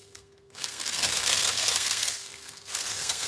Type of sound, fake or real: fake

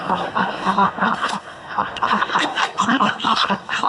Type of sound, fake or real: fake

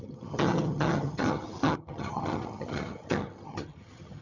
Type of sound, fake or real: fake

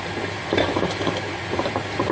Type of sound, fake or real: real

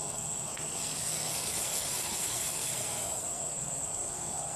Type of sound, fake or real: fake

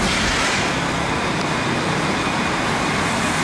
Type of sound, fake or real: real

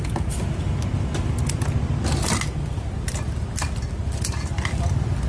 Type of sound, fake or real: real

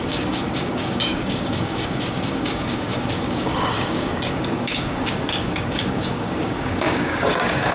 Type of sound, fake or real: fake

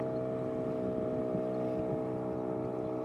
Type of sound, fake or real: real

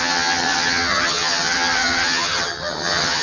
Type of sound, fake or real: fake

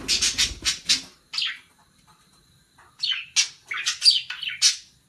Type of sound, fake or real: real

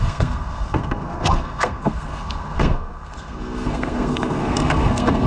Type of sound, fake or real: fake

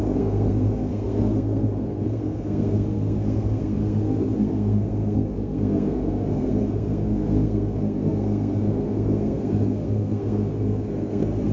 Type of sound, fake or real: fake